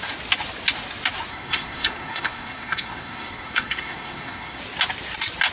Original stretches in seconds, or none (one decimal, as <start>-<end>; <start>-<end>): 0.0-1.3; 4.6-5.5